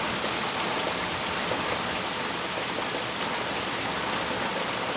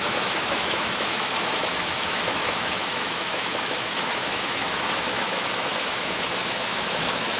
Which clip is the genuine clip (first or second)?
first